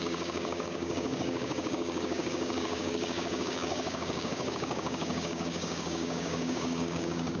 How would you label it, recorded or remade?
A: remade